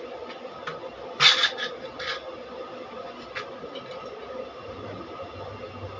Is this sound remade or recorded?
recorded